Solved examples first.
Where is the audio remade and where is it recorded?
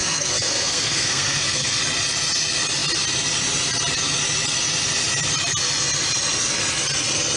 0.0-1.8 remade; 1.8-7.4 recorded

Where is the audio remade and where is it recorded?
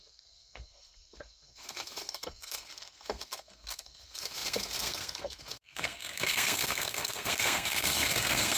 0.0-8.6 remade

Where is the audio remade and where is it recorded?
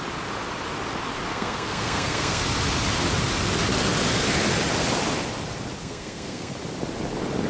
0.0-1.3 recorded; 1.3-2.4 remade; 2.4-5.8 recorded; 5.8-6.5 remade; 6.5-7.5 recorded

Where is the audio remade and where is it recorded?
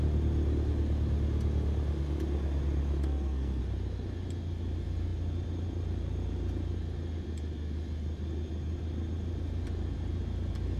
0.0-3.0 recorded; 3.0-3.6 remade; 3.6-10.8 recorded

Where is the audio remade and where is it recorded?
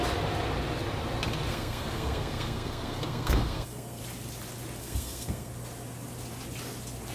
0.0-1.5 recorded; 1.5-4.0 remade; 4.0-4.8 recorded; 4.8-5.5 remade; 5.5-7.1 recorded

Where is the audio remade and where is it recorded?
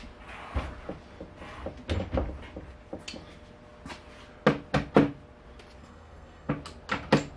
0.0-5.8 recorded; 5.8-6.5 remade; 6.5-7.4 recorded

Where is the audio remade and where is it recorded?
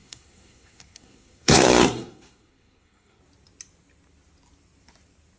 0.0-3.2 remade; 3.2-5.4 recorded